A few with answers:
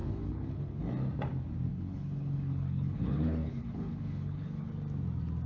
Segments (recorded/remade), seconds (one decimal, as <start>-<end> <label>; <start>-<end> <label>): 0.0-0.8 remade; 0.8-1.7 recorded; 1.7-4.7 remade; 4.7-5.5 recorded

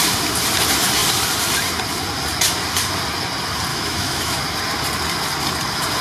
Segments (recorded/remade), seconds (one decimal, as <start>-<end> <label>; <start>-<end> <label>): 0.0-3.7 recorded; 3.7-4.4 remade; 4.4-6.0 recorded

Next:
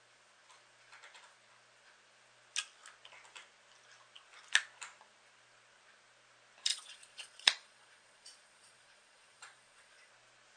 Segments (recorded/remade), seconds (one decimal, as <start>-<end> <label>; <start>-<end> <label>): 0.0-6.7 recorded; 6.7-10.1 remade; 10.1-10.6 recorded